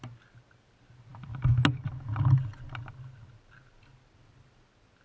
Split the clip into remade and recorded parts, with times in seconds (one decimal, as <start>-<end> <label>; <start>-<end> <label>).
0.0-5.0 recorded